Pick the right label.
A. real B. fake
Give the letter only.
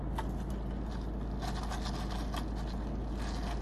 A